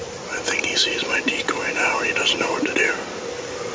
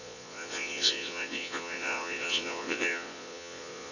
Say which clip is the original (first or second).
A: first